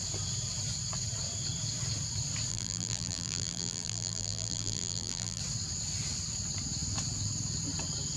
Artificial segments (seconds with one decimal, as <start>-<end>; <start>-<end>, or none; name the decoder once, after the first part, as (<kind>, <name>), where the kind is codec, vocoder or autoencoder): 2.5-5.4 (vocoder, BigVGAN v2)